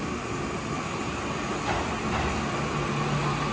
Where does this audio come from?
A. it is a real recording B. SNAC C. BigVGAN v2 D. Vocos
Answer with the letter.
A